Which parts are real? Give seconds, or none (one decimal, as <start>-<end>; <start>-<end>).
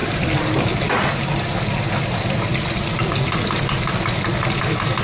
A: 0.0-5.0